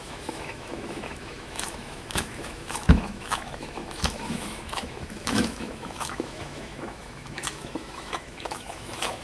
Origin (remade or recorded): remade